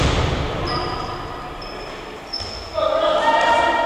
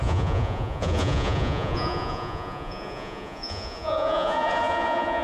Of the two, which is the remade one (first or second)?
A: second